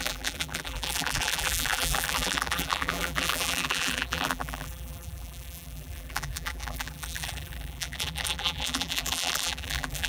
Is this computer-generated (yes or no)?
yes